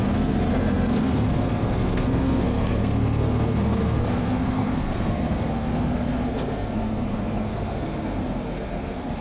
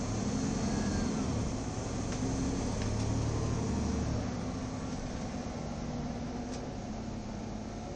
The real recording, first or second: second